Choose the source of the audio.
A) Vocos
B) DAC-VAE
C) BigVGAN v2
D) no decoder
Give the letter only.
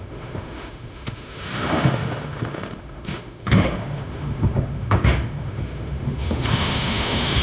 B